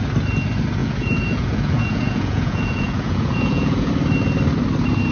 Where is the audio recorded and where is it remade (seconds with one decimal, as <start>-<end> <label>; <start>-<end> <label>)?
0.0-0.8 recorded; 0.8-3.9 remade; 3.9-5.1 recorded